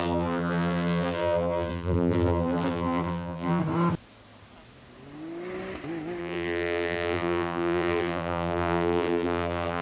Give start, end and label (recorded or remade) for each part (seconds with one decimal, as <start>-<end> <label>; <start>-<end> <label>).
0.0-3.6 remade; 3.6-6.2 recorded; 6.2-9.8 remade